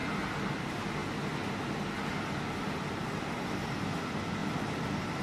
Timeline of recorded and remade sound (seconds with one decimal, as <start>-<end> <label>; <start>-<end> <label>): 0.0-5.2 recorded